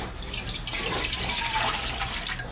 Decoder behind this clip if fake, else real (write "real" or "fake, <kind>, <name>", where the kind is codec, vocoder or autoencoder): real